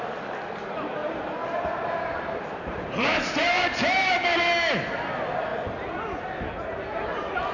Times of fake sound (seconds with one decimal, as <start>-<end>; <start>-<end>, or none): 1.0-4.3